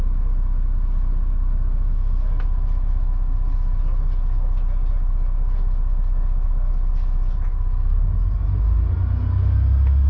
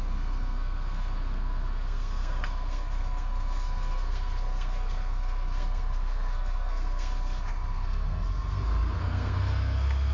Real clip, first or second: first